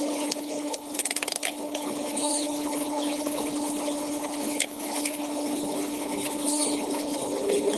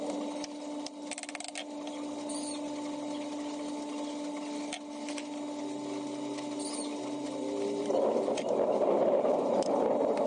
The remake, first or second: first